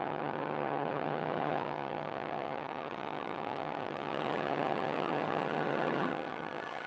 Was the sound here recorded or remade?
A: remade